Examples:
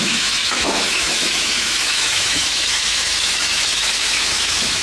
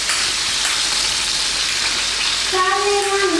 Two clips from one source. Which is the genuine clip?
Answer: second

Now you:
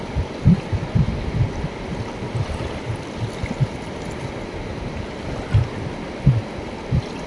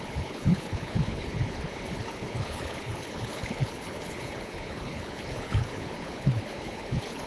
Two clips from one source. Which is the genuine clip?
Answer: first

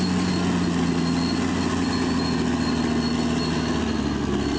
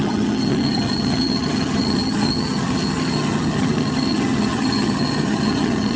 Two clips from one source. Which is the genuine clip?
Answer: first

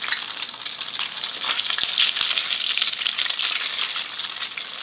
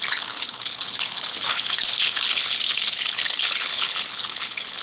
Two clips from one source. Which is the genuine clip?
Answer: first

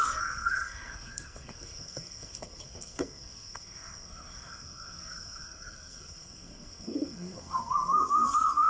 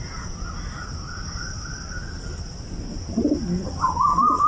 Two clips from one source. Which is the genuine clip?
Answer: second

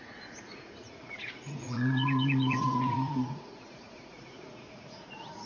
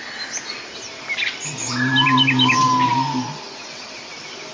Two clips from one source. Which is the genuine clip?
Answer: second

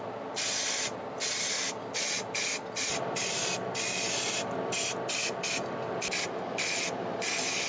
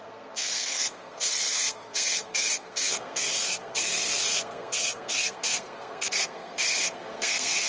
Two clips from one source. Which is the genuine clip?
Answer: first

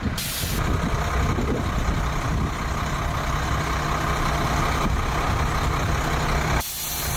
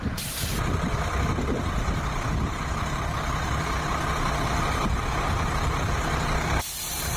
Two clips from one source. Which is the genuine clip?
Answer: first